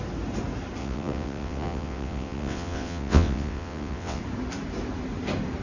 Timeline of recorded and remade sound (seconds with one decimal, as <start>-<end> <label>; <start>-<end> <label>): 0.0-0.8 recorded; 0.8-4.2 remade; 4.2-5.6 recorded

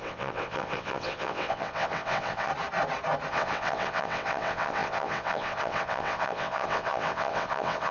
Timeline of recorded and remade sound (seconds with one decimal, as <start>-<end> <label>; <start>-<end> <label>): 0.0-2.5 remade; 2.5-3.3 recorded; 3.3-7.9 remade

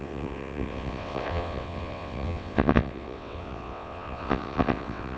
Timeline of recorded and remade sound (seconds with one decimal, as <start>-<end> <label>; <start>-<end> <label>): 0.0-5.2 remade

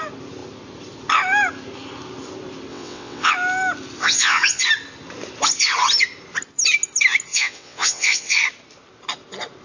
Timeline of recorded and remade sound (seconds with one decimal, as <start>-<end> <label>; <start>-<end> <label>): 0.0-2.7 recorded; 2.7-3.3 remade; 3.3-4.0 recorded; 4.0-4.6 remade; 4.6-7.3 recorded; 7.3-8.4 remade; 8.4-9.6 recorded